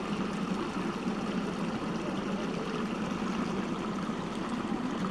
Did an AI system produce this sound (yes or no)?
no